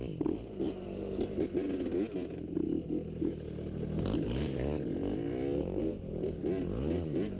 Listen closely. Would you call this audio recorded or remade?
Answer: recorded